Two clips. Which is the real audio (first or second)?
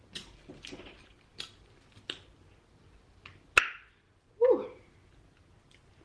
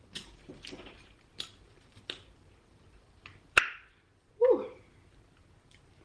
first